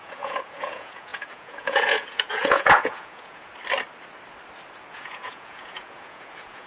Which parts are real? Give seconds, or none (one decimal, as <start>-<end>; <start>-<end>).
3.5-4.9